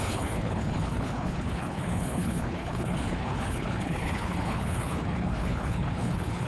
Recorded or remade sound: remade